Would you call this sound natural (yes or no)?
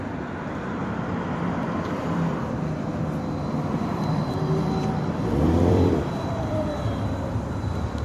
no